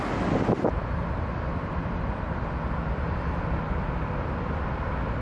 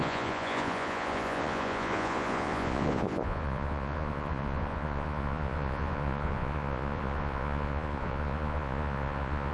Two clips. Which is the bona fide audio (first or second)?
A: first